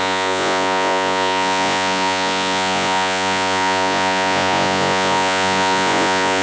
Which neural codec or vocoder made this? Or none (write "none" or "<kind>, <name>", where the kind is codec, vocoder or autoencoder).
vocoder, Vocos